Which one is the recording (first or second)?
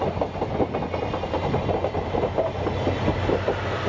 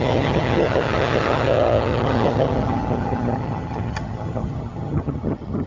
first